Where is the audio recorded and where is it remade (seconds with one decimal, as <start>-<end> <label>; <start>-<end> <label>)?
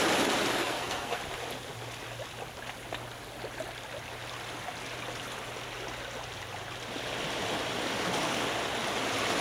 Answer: 0.0-0.6 recorded; 0.6-1.2 remade; 1.2-9.4 recorded